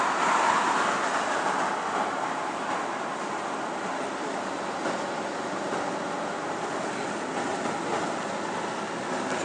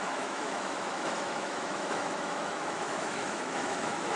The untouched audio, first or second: first